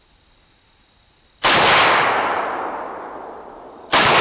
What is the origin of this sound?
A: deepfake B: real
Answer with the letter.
B